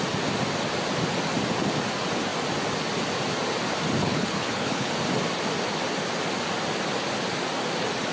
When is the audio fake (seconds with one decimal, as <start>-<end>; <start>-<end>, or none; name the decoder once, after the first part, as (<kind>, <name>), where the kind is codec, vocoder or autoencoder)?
4.0-4.9 (codec, HILCodec)